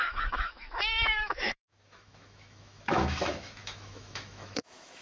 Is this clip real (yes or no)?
no